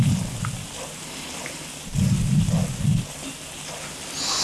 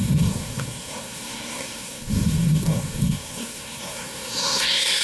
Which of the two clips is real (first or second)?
first